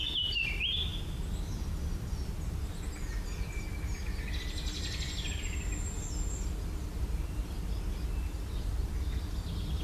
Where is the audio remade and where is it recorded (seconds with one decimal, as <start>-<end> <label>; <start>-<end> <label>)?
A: 0.0-9.8 recorded